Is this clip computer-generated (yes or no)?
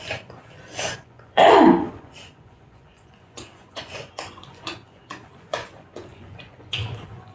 yes